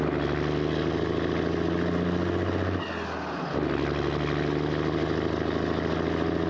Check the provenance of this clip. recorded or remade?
recorded